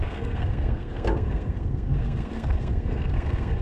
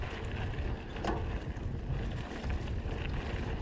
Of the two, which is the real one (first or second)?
second